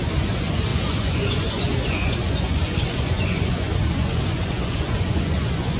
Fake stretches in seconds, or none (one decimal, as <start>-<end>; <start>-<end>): 0.0-5.8